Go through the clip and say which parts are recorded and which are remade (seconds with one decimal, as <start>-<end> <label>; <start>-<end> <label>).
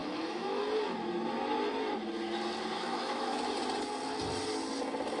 0.0-0.6 remade; 0.6-2.7 recorded; 2.7-3.4 remade; 3.4-5.2 recorded